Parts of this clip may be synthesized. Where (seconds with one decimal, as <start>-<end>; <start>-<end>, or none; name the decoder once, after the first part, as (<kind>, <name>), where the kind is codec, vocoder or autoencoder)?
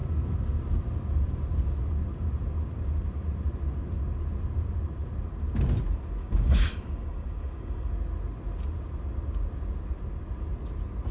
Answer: 6.2-7.9 (codec, DAC)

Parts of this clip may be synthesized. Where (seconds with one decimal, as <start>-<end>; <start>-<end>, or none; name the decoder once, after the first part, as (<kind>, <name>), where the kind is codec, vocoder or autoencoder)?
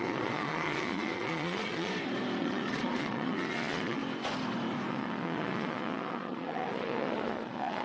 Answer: 0.0-1.9 (vocoder, Vocos); 2.4-4.0; 4.9-7.8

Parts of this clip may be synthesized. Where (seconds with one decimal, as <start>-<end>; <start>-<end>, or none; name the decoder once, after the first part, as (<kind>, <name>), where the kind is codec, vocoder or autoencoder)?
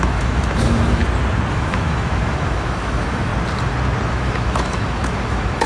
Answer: 0.0-1.0 (autoencoder, DAC-VAE); 1.5-3.3; 4.1-5.7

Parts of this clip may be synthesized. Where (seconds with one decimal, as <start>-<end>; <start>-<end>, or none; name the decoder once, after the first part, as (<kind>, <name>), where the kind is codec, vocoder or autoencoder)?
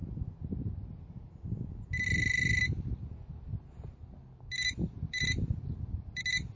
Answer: none